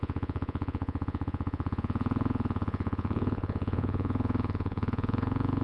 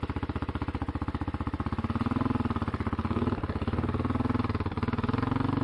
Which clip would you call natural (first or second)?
second